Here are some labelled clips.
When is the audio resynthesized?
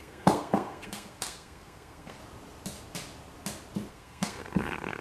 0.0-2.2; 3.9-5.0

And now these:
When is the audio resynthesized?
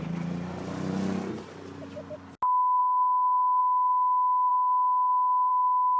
2.8-3.6; 4.5-5.5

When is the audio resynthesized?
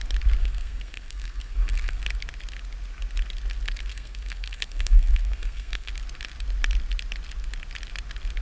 0.4-2.0; 3.9-5.9